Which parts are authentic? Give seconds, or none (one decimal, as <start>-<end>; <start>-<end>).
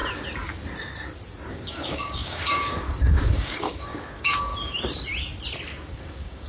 0.0-1.5; 4.5-5.9